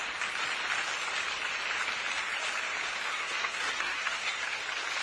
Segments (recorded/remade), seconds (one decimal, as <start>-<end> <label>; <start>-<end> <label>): 0.0-3.1 recorded; 3.1-4.6 remade; 4.6-5.0 recorded